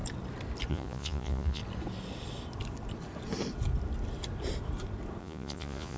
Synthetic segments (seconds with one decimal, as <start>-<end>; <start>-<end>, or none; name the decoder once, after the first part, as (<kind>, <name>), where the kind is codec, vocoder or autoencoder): 0.7-1.6 (vocoder, Vocos); 5.2-6.0